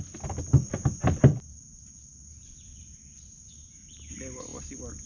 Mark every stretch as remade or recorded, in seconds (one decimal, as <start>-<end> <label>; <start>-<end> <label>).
0.0-1.3 recorded; 1.3-4.1 remade; 4.1-5.1 recorded